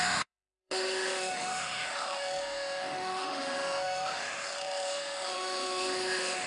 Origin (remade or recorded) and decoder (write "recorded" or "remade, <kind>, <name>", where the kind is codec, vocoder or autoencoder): remade, autoencoder, DAC-VAE